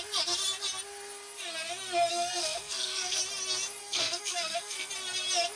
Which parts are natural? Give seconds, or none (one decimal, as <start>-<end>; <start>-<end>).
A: 0.0-2.1; 3.2-3.8; 4.9-5.6